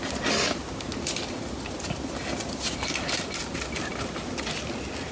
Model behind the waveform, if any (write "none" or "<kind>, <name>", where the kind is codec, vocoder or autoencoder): none